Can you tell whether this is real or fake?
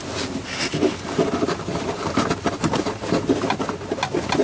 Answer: real